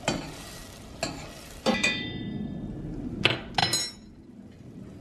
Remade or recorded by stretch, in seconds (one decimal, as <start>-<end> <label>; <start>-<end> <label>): 0.0-5.0 recorded